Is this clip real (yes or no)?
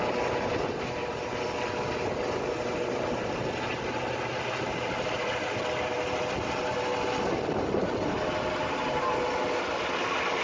yes